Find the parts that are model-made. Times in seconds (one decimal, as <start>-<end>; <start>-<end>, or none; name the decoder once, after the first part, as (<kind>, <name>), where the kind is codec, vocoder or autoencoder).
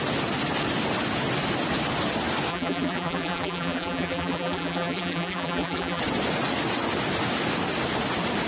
2.5-6.0 (vocoder, BigVGAN v2)